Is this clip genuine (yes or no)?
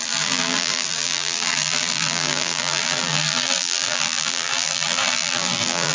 no